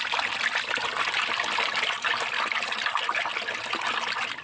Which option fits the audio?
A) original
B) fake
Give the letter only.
A